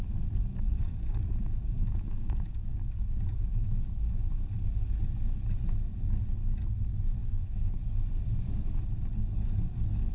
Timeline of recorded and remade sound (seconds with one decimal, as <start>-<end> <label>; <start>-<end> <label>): 0.0-0.5 recorded; 0.5-4.3 remade; 4.3-7.2 recorded; 7.2-7.8 remade; 7.8-9.2 recorded; 9.2-10.1 remade